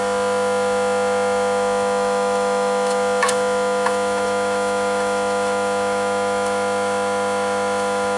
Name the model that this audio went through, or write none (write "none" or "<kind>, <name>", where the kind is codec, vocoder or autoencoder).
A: autoencoder, DAC-VAE